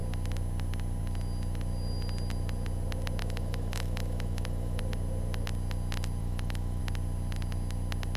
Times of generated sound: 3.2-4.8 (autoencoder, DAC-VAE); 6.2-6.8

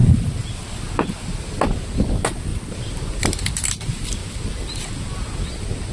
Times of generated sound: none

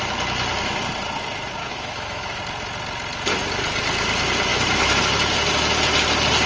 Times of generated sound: 1.6-2.4 (autoencoder, DAC-VAE); 4.5-5.0

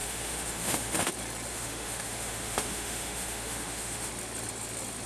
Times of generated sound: 0.0-1.1 (autoencoder, DAC-VAE); 1.5-4.1

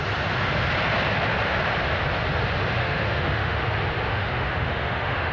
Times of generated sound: 2.8-3.6 (autoencoder, DAC-VAE); 4.1-5.3

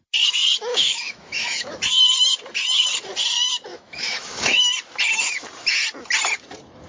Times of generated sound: 0.7-1.8 (autoencoder, DAC-VAE); 3.7-4.6